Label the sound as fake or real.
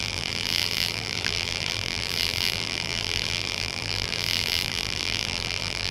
fake